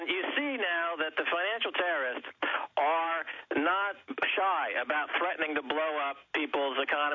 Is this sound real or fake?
real